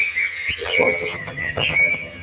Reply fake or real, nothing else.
fake